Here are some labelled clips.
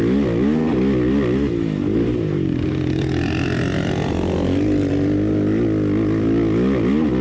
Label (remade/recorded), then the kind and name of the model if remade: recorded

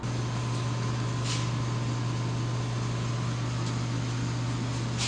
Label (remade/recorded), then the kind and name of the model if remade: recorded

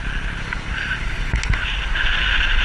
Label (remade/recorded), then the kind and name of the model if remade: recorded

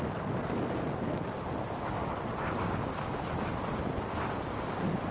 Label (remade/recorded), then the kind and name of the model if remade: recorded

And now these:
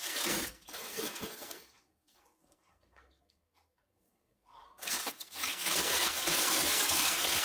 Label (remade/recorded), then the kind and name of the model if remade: remade, codec, SNAC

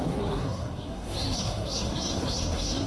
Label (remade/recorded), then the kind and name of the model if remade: remade, codec, SNAC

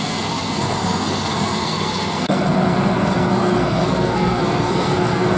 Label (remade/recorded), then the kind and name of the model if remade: remade, codec, SNAC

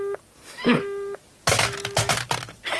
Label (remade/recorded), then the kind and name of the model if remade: recorded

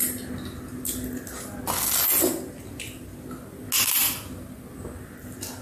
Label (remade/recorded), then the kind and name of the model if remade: recorded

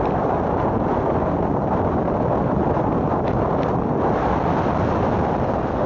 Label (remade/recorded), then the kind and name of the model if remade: recorded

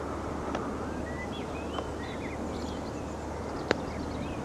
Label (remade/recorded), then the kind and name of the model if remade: recorded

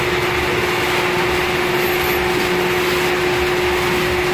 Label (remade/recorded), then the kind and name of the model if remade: recorded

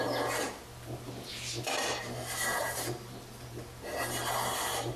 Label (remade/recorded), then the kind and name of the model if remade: recorded